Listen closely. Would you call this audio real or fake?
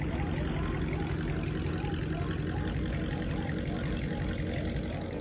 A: real